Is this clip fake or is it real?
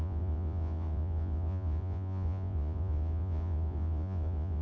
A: fake